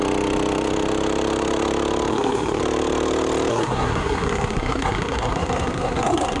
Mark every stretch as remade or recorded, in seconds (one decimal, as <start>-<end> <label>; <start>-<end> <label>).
0.0-2.1 recorded; 2.1-2.6 remade; 2.6-3.5 recorded; 3.5-6.4 remade